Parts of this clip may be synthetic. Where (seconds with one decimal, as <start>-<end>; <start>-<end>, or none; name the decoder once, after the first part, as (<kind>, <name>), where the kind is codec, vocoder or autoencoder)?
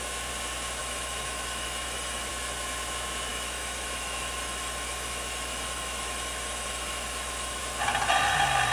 0.8-2.3 (autoencoder, DAC-VAE); 3.3-7.6